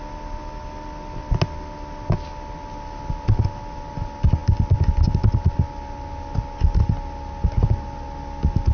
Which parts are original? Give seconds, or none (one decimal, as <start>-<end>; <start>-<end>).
0.0-8.7